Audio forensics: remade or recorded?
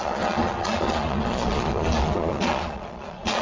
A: remade